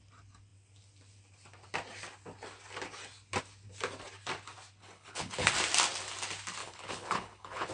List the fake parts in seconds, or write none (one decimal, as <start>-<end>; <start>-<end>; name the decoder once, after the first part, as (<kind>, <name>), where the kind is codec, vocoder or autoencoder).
4.8-5.5 (codec, HILCodec); 6.6-7.7